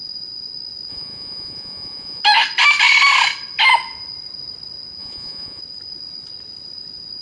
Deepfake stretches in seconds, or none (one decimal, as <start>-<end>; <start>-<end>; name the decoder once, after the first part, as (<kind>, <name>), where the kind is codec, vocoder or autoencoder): 0.9-2.2 (vocoder, Vocos); 5.0-5.6